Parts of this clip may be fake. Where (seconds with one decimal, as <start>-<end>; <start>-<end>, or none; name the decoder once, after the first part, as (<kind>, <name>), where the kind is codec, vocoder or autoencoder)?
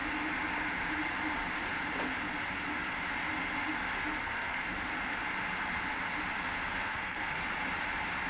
4.2-4.7 (codec, SNAC); 6.9-7.5